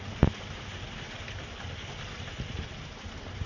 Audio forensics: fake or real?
real